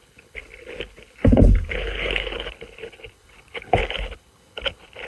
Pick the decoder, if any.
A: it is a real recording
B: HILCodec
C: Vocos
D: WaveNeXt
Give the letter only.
B